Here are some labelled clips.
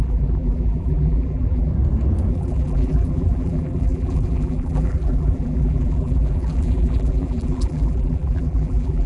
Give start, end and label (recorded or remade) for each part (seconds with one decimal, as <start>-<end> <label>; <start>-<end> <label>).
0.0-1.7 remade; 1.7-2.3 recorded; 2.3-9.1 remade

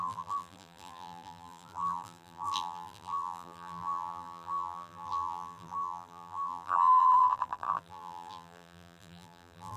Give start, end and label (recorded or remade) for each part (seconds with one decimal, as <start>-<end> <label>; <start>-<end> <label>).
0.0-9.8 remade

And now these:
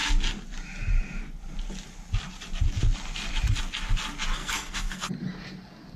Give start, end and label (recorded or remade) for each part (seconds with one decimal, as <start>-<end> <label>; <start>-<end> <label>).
0.0-4.4 recorded; 4.4-5.1 remade; 5.1-6.0 recorded